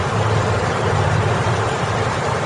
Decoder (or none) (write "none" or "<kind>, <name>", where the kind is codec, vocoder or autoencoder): none